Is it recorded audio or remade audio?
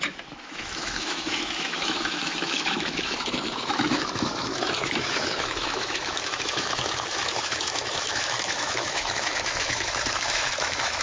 remade